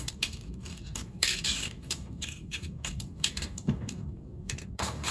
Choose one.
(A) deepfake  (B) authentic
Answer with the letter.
A